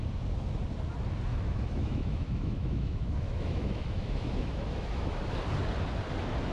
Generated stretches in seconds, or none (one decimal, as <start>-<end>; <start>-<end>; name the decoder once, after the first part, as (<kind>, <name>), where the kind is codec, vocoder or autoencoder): 1.3-5.2 (autoencoder, DAC-VAE)